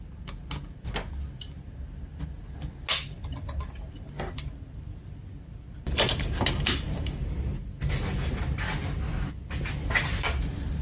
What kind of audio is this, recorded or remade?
recorded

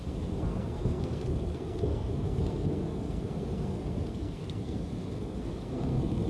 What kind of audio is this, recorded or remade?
remade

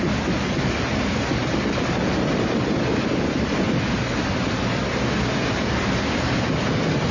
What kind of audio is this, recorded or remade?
recorded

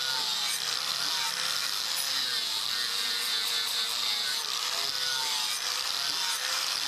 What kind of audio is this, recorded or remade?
recorded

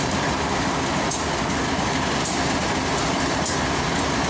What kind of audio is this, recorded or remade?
recorded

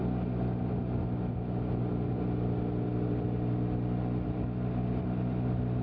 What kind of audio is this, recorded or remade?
recorded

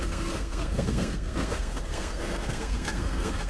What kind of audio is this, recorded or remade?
remade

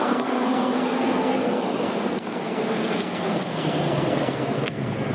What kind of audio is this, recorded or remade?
remade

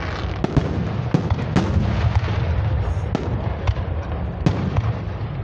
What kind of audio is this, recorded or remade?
recorded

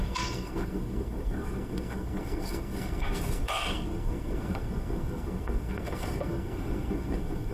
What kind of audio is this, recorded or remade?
remade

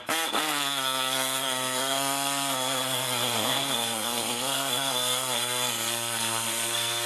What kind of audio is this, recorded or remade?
remade